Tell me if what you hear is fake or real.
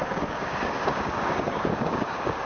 fake